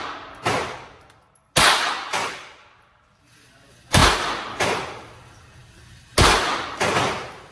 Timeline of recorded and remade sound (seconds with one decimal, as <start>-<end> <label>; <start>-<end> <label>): 0.0-7.5 recorded